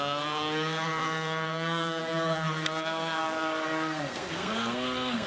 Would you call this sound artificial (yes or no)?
yes